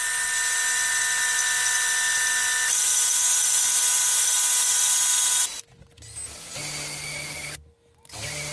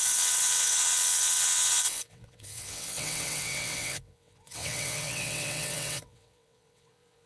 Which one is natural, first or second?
first